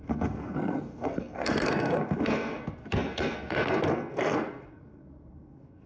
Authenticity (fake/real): fake